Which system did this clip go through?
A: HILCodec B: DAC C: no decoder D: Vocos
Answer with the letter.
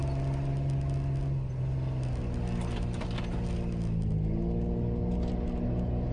C